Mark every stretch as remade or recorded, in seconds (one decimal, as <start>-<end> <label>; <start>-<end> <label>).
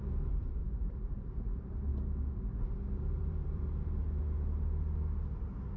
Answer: 0.0-1.9 remade; 1.9-3.1 recorded; 3.1-4.0 remade; 4.0-5.8 recorded